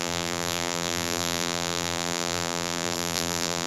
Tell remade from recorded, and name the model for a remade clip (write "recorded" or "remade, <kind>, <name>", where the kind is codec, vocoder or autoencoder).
remade, vocoder, BigVGAN v2